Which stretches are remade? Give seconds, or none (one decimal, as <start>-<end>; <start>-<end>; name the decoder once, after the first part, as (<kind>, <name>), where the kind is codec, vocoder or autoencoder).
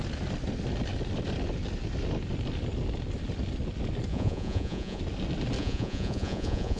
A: 4.1-5.0 (vocoder, Vocos); 5.6-6.8